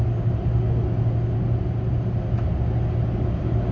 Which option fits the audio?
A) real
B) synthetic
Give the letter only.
A